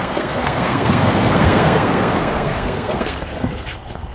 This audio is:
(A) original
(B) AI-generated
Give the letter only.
B